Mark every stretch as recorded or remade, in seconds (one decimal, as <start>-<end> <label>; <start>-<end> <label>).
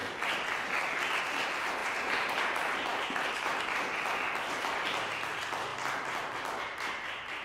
0.0-1.8 recorded; 1.8-2.4 remade; 2.4-7.4 recorded